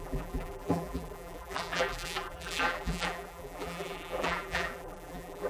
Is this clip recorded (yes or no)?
no